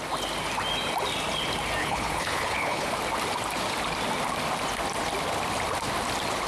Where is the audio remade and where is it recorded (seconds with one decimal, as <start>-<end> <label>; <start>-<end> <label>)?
0.0-1.8 recorded; 1.8-2.9 remade; 2.9-6.5 recorded